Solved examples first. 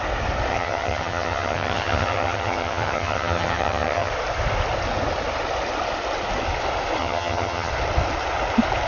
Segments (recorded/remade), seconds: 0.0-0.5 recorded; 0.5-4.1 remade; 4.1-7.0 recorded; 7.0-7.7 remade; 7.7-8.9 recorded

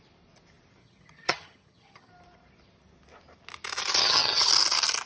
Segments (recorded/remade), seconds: 0.0-0.8 recorded; 0.8-2.1 remade; 2.1-4.0 recorded; 4.0-4.5 remade; 4.5-5.1 recorded